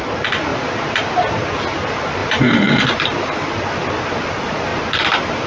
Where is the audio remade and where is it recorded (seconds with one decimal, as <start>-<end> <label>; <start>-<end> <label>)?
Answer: 0.0-0.5 recorded; 0.5-1.2 remade; 1.2-2.2 recorded; 2.2-2.8 remade; 2.8-5.5 recorded